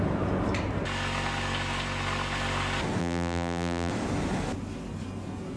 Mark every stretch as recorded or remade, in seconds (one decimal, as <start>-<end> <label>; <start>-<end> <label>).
0.0-3.0 recorded; 3.0-3.9 remade; 3.9-5.6 recorded